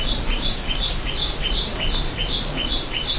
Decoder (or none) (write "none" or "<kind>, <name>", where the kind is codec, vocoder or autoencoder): none